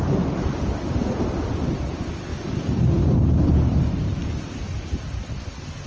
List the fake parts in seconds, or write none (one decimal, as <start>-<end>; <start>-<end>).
none